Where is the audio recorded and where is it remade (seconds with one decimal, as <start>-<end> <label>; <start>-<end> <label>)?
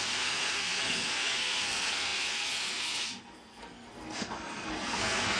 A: 0.0-5.4 remade